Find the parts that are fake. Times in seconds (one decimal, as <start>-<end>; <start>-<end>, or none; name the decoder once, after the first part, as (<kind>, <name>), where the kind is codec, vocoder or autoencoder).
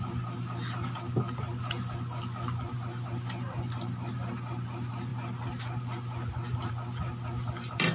none